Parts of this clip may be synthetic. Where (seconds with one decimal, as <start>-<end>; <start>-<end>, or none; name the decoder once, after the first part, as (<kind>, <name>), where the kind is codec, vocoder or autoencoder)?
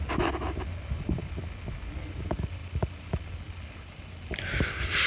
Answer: none